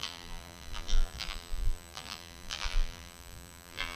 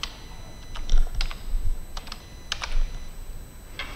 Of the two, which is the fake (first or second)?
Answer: first